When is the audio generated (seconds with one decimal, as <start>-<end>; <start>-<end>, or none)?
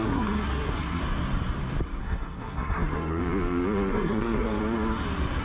0.0-1.0; 2.0-3.2; 3.9-4.6